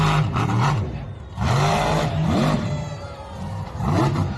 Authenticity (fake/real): fake